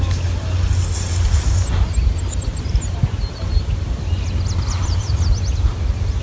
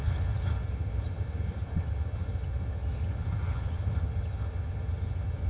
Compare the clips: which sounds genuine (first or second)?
first